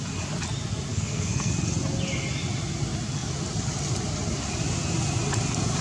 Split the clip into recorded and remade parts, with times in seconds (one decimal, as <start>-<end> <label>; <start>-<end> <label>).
0.0-0.9 recorded; 0.9-1.5 remade; 1.5-5.8 recorded